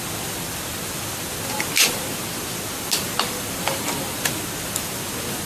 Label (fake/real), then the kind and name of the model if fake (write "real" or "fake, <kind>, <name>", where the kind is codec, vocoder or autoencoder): real